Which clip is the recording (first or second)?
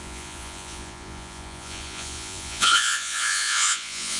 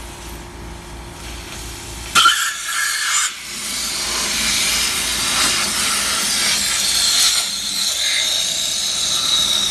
second